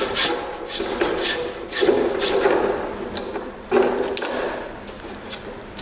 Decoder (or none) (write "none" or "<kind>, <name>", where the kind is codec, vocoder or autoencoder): none